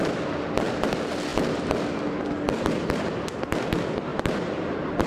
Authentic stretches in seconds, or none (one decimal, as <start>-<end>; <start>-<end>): 0.0-1.3; 2.2-4.1